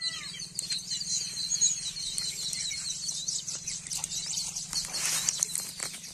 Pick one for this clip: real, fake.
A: fake